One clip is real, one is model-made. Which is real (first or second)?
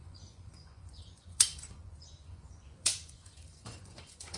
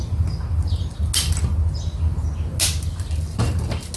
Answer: second